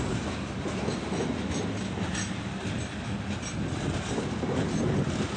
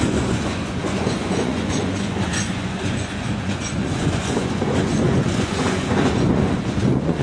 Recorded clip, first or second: first